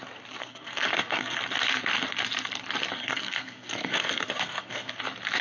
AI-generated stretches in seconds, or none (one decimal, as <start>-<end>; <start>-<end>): 0.4-1.4; 3.0-5.0